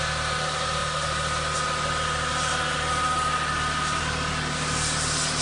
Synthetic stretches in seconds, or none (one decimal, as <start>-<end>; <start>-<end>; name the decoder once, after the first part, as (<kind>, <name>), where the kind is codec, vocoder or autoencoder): none